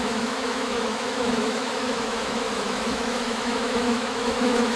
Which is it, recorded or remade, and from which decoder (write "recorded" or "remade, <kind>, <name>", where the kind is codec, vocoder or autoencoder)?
remade, autoencoder, DAC-VAE